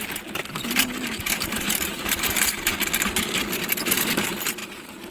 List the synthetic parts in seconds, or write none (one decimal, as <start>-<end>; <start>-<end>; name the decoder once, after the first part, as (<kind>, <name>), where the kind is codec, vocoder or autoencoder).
1.2-2.7 (vocoder, BigVGAN v2); 3.8-5.1